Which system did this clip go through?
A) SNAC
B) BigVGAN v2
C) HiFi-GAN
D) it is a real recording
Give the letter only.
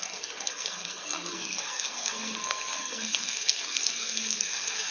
A